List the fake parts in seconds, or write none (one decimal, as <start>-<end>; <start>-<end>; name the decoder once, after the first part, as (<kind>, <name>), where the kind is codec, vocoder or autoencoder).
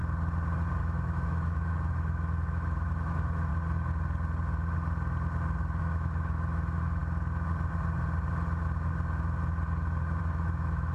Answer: 0.8-3.5 (autoencoder, DAC-VAE); 5.8-7.0; 10.2-10.9